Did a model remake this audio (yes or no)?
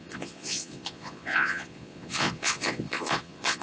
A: yes